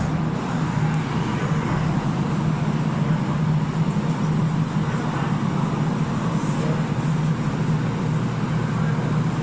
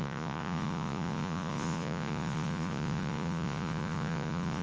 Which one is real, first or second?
first